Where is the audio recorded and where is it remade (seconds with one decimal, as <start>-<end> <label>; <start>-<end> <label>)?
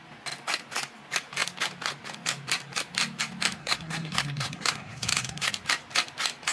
0.0-3.6 recorded; 3.6-5.5 remade; 5.5-6.5 recorded